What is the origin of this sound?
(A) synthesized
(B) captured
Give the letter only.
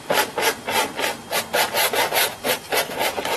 B